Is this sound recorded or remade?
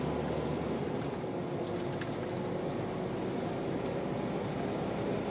recorded